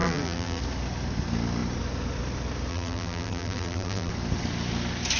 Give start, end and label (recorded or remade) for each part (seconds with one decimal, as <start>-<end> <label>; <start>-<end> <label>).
0.0-0.6 remade; 0.6-2.7 recorded; 2.7-4.1 remade; 4.1-5.2 recorded